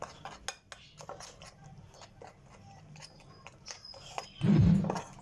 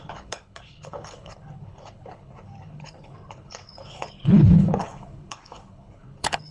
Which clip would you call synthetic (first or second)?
second